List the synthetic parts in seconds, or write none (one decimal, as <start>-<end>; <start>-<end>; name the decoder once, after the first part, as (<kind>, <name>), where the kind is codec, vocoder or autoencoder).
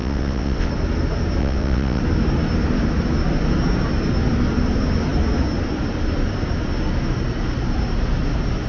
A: 0.0-0.7 (vocoder, WaveNeXt); 1.4-2.0